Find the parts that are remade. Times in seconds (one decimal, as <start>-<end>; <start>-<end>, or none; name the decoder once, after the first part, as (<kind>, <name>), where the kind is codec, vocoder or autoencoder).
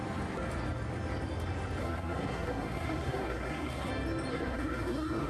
1.8-3.9 (codec, SNAC); 4.3-5.3